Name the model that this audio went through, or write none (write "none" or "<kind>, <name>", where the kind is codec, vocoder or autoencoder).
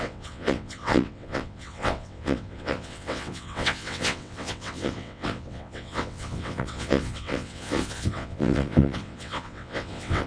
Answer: vocoder, WaveNeXt